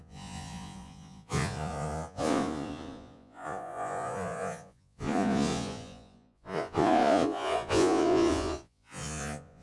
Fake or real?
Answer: fake